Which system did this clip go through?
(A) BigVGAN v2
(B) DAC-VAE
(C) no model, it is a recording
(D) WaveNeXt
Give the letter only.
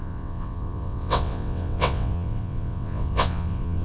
D